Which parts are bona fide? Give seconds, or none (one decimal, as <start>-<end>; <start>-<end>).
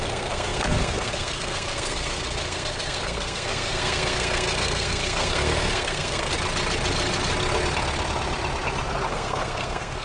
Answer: 6.3-9.1